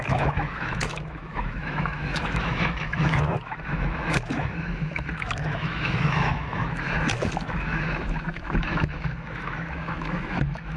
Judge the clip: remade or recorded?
remade